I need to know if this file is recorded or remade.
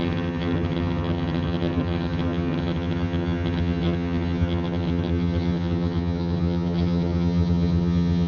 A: remade